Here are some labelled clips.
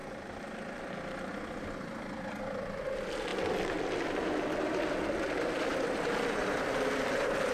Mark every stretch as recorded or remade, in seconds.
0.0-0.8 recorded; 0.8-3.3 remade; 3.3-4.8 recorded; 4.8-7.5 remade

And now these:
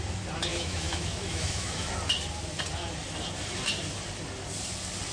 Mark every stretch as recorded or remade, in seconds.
0.0-0.5 recorded; 0.5-1.9 remade; 1.9-5.1 recorded

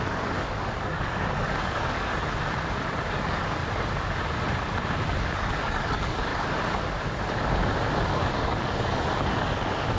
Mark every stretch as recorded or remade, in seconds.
0.0-2.1 remade; 2.1-3.1 recorded; 3.1-3.6 remade; 3.6-5.2 recorded; 5.2-6.3 remade; 6.3-8.1 recorded; 8.1-10.0 remade

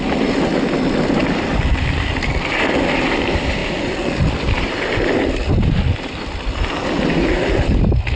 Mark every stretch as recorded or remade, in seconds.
0.0-1.2 recorded; 1.2-2.3 remade; 2.3-3.6 recorded; 3.6-4.6 remade; 4.6-8.2 recorded